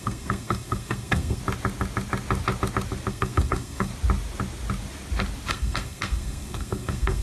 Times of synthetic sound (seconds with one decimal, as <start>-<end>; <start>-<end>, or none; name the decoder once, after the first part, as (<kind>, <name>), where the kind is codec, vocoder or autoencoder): 0.0-1.4 (codec, SNAC); 3.1-3.9; 5.5-7.2